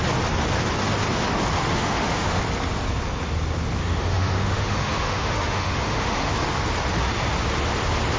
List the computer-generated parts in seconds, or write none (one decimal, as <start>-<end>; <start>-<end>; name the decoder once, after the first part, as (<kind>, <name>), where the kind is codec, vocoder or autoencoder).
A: 1.6-2.4 (autoencoder, DAC-VAE); 3.8-6.3